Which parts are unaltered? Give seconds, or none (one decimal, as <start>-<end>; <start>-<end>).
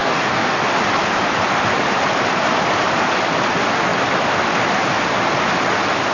0.6-6.1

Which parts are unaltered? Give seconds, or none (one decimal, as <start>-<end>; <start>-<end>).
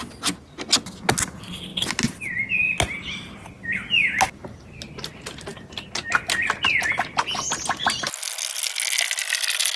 0.0-9.8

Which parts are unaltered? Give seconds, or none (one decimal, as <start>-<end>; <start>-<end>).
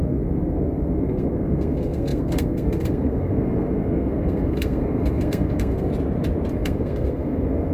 5.9-6.5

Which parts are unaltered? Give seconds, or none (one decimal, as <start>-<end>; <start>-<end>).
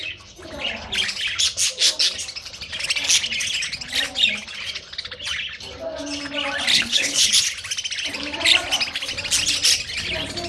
0.0-6.7; 7.3-10.5